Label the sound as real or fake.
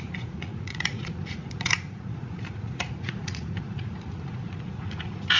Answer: fake